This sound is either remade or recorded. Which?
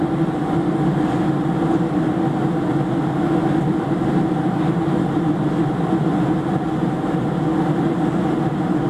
recorded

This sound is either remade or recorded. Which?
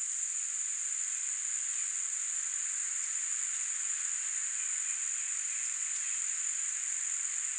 recorded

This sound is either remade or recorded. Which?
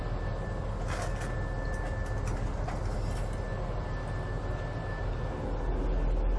recorded